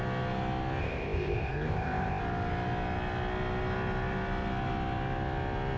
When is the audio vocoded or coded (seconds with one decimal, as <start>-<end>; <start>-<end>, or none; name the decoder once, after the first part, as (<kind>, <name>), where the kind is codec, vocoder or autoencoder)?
0.8-2.2 (codec, ZipCodec)